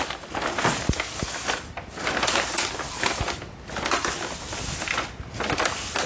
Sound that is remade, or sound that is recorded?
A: recorded